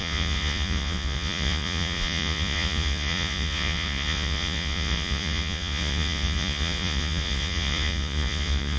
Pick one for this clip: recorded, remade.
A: remade